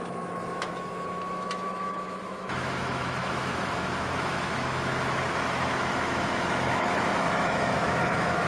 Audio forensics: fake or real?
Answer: fake